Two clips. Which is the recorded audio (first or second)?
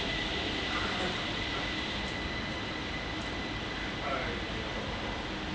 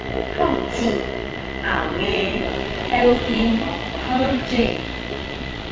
first